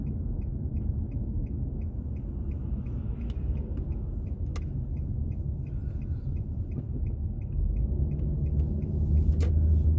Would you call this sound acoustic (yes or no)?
yes